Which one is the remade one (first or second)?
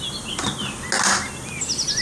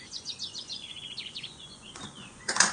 second